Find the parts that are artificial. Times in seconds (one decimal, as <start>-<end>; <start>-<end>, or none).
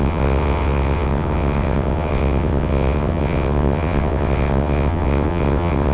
0.0-5.9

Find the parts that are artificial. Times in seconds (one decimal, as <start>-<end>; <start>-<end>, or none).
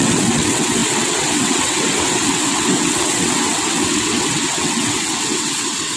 0.0-6.0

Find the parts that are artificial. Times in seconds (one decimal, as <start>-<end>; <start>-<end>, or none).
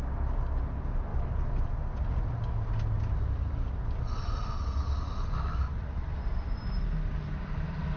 none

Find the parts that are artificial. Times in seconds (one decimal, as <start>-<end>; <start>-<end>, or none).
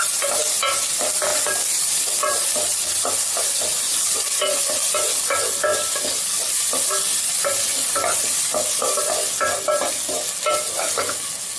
none